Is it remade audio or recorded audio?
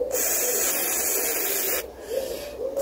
recorded